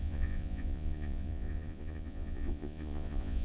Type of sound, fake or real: fake